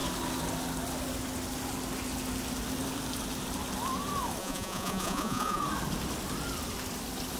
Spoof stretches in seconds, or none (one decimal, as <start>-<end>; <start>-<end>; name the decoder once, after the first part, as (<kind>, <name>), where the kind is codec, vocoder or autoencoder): 4.4-5.6 (vocoder, Vocos)